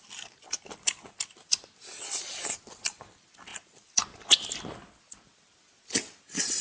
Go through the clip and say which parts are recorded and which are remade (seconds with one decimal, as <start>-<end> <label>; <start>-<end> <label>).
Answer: 0.0-6.6 recorded